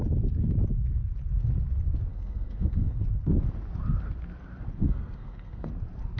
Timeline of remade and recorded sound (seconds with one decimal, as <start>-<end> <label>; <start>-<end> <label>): 0.0-2.1 recorded; 2.1-3.0 remade; 3.0-4.8 recorded; 4.8-5.7 remade; 5.7-6.2 recorded